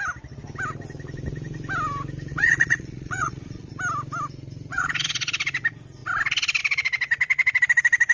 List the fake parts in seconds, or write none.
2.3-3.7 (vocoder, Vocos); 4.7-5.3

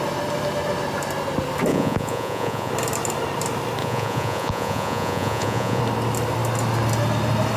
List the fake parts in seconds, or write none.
1.7-2.7 (vocoder, Vocos); 3.8-5.8

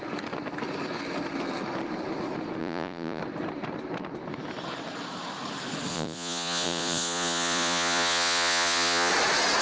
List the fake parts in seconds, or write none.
2.6-3.2 (vocoder, Vocos); 5.9-9.1